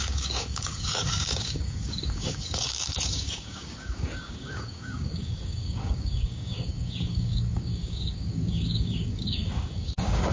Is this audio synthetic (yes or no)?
yes